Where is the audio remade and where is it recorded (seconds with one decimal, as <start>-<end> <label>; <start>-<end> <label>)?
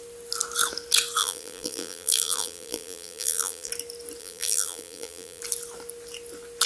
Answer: 0.0-1.2 recorded; 1.2-3.7 remade; 3.7-4.2 recorded; 4.2-5.4 remade; 5.4-6.7 recorded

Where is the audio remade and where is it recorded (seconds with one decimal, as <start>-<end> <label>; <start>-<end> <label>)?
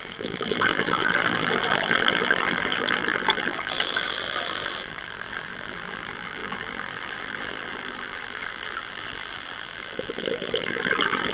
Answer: 0.0-11.3 remade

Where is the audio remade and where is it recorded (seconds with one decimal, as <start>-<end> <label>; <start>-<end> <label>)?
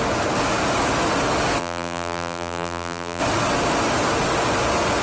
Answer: 0.0-1.6 recorded; 1.6-3.2 remade; 3.2-5.0 recorded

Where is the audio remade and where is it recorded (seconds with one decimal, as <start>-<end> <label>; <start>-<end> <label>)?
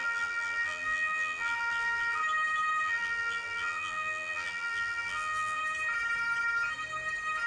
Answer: 0.0-2.2 remade; 2.2-2.8 recorded; 2.8-5.6 remade; 5.6-7.5 recorded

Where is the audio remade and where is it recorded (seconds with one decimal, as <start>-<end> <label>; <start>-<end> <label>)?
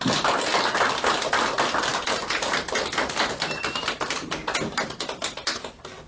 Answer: 0.0-6.1 recorded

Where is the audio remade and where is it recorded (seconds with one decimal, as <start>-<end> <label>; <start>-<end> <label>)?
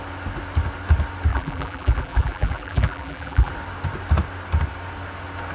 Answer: 0.0-1.3 recorded; 1.3-3.5 remade; 3.5-5.5 recorded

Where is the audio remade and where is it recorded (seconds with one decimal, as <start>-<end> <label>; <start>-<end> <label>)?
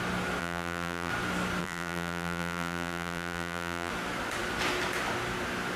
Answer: 0.0-0.4 recorded; 0.4-1.1 remade; 1.1-1.6 recorded; 1.6-3.9 remade; 3.9-5.8 recorded